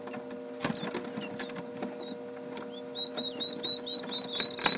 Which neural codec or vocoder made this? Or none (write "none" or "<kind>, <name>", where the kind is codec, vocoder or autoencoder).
none